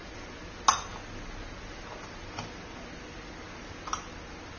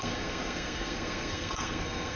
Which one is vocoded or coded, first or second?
second